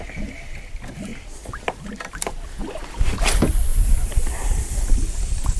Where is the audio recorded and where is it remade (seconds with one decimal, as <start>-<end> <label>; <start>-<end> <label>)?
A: 0.0-2.6 recorded; 2.6-3.2 remade; 3.2-3.7 recorded; 3.7-4.9 remade; 4.9-5.6 recorded